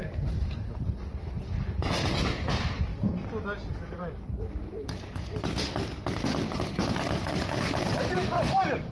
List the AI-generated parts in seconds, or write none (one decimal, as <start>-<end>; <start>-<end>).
0.0-2.9; 3.7-8.9